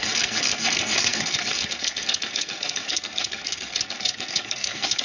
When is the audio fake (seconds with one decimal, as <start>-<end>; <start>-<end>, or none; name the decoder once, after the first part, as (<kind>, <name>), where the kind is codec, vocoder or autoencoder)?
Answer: 0.0-5.0 (codec, SNAC)

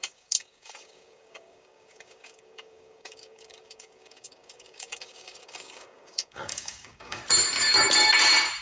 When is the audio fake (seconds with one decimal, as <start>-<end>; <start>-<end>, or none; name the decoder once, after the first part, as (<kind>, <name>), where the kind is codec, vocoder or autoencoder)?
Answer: 0.0-7.2 (codec, DAC)